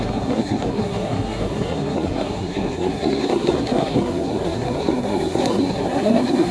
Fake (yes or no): yes